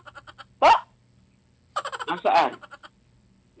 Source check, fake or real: real